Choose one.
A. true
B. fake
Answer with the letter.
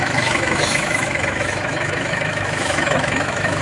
B